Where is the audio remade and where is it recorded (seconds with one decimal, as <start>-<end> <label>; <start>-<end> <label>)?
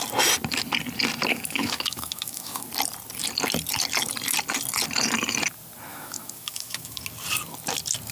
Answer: 0.0-1.3 recorded; 1.3-2.7 remade; 2.7-5.9 recorded; 5.9-7.0 remade; 7.0-8.1 recorded